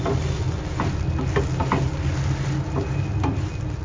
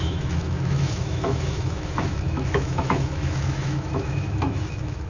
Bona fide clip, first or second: first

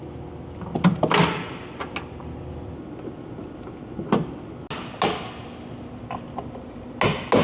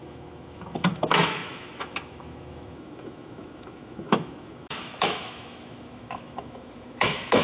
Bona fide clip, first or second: first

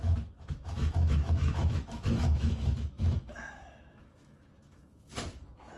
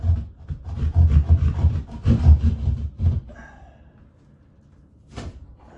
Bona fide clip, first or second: second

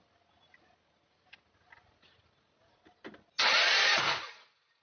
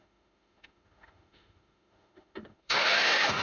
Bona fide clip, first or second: first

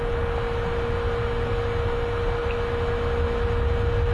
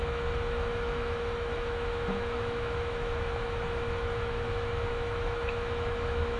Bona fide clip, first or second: first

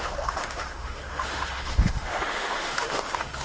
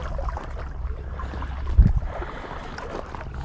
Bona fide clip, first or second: second